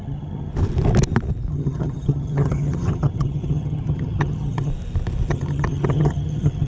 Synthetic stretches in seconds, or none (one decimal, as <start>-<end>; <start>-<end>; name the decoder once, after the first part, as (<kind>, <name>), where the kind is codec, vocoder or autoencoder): 0.0-0.5 (vocoder, HiFi-GAN); 1.5-4.7; 5.3-6.7